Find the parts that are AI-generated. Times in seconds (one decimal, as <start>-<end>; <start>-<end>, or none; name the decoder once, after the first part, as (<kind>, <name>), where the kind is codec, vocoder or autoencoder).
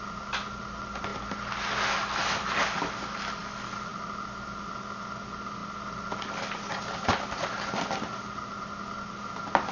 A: none